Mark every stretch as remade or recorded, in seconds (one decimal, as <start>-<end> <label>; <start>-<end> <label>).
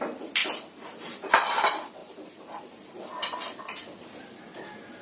0.0-2.0 remade; 2.0-5.0 recorded